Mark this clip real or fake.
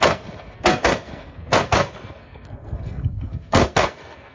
fake